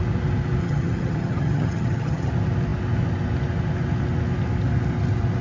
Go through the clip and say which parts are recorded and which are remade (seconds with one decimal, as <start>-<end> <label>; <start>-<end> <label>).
0.0-0.6 recorded; 0.6-2.3 remade; 2.3-5.4 recorded